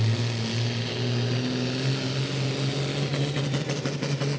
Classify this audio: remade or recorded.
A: recorded